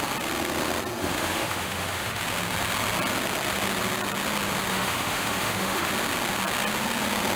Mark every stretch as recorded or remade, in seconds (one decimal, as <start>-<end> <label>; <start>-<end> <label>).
0.0-1.0 recorded; 1.0-2.2 remade; 2.2-4.7 recorded; 4.7-5.9 remade; 5.9-7.4 recorded